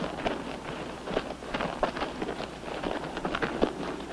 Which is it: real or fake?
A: real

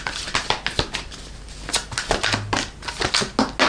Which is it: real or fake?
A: real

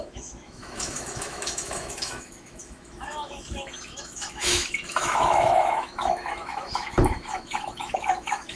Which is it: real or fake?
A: fake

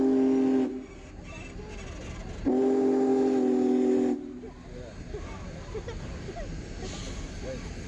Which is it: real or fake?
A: real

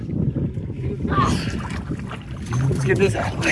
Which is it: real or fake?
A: real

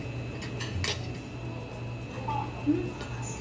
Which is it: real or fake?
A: real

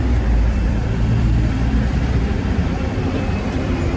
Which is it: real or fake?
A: fake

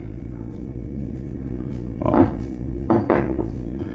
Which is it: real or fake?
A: fake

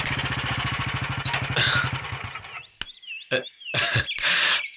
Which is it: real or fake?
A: real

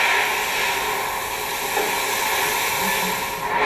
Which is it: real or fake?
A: real